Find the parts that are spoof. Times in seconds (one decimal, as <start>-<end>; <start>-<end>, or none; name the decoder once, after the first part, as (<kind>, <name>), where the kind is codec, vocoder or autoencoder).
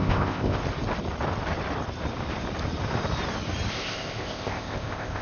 0.0-0.6 (codec, ZipCodec); 3.7-5.2